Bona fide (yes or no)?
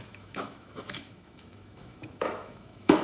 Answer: no